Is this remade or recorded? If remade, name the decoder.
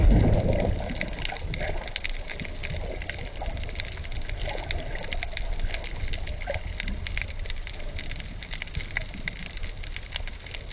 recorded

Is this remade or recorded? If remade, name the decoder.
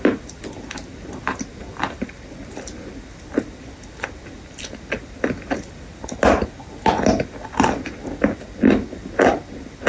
recorded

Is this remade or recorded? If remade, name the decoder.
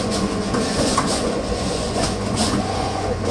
remade, vocoder, Vocos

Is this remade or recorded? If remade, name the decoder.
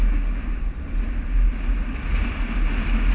recorded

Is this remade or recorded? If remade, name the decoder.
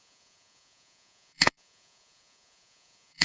remade, vocoder, Vocos